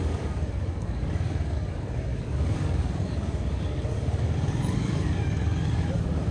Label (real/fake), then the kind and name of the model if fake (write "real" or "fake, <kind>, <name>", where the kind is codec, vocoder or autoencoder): fake, codec, DAC